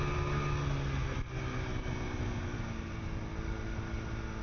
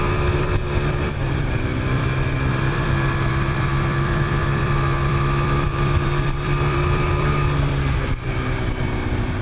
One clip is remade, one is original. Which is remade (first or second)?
second